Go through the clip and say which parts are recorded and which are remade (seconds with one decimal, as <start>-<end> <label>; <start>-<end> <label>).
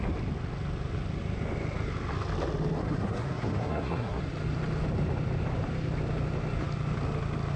0.0-2.8 recorded; 2.8-4.2 remade; 4.2-7.6 recorded